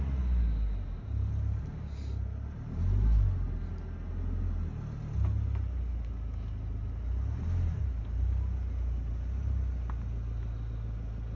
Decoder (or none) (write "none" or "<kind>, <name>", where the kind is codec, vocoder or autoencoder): none